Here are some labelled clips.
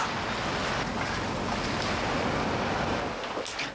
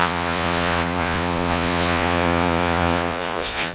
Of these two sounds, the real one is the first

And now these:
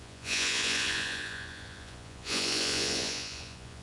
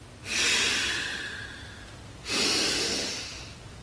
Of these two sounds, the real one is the second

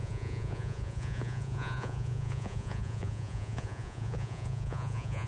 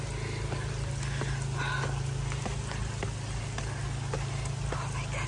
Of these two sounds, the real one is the second